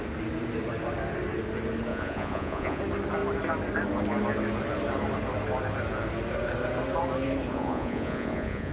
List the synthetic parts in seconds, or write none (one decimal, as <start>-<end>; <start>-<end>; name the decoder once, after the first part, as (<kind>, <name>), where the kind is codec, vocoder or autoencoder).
1.9-2.8 (vocoder, Vocos); 7.5-8.7